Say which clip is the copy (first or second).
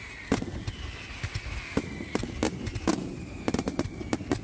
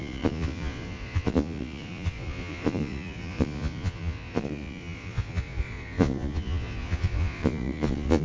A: second